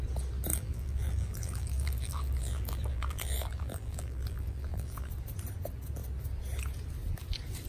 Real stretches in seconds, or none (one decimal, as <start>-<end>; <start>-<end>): 0.0-0.5; 5.1-7.7

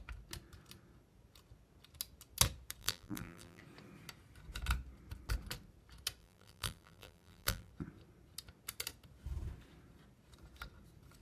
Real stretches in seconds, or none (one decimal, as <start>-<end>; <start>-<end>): 0.0-2.8; 3.6-6.2; 7.7-11.2

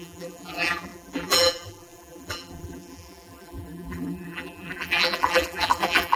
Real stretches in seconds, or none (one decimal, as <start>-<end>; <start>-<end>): none

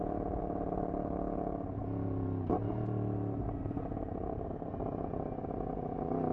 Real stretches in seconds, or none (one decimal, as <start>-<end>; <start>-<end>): 0.0-1.8; 4.7-6.3

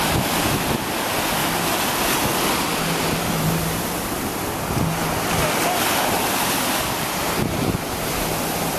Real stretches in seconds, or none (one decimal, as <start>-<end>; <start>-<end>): 0.0-8.8

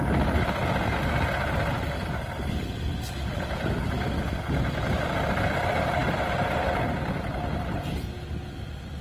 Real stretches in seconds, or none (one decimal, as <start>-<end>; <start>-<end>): 0.0-9.0

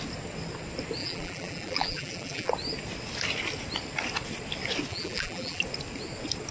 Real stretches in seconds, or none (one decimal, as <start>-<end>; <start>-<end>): 0.0-1.0; 2.5-4.9; 5.6-6.5